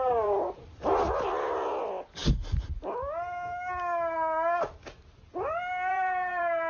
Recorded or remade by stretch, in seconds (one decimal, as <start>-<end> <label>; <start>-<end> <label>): 0.0-0.9 remade; 0.9-1.8 recorded; 1.8-2.2 remade; 2.2-5.9 recorded; 5.9-6.7 remade